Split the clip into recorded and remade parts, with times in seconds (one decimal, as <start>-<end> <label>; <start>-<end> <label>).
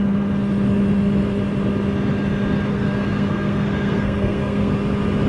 0.0-2.7 recorded; 2.7-4.7 remade; 4.7-5.3 recorded